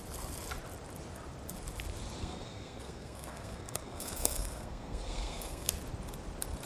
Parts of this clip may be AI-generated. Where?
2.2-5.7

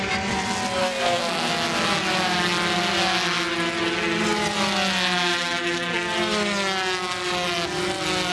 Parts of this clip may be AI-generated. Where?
0.8-1.5